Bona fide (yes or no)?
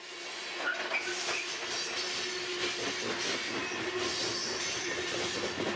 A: yes